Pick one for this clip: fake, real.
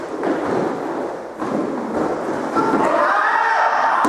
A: real